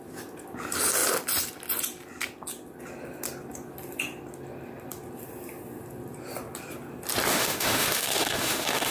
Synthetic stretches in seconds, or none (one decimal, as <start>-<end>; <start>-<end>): 7.3-8.9